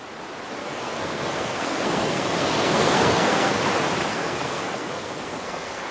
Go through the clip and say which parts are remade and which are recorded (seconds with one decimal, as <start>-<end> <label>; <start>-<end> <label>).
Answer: 0.0-0.6 recorded; 0.6-3.6 remade; 3.6-4.1 recorded; 4.1-5.9 remade